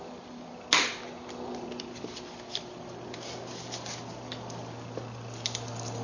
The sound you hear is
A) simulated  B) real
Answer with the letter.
B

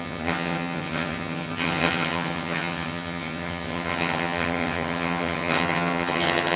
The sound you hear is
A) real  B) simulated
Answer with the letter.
B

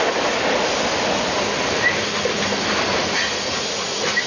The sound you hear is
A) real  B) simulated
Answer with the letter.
A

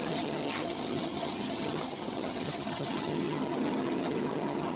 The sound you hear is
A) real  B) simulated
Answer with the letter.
B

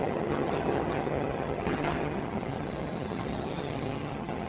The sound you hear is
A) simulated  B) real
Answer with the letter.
A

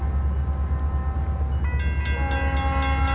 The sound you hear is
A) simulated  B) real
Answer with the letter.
B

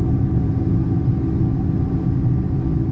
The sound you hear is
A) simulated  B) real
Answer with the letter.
B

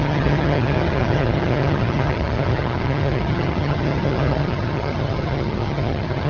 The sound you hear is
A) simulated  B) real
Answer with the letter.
A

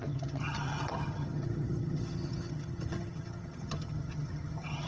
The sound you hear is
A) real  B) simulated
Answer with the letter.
B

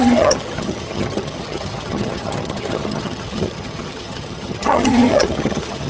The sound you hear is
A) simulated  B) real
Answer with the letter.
A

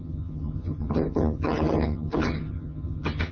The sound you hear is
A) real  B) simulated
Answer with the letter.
B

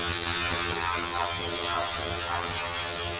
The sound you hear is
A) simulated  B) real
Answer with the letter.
A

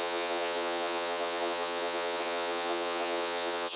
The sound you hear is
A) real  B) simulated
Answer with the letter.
B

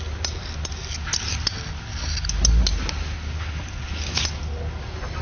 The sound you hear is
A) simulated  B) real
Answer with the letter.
B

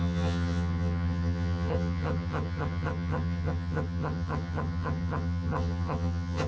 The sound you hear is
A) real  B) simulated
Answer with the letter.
B